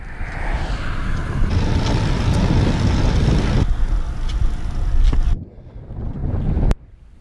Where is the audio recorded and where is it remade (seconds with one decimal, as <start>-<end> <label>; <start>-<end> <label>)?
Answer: 0.0-7.2 recorded